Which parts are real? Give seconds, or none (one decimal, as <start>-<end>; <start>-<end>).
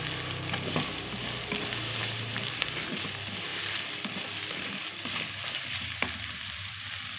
0.0-2.0; 3.1-3.5; 6.5-7.2